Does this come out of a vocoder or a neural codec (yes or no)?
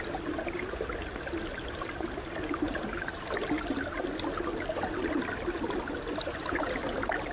no